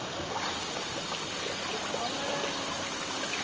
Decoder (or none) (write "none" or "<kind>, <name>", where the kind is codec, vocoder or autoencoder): vocoder, BigVGAN v2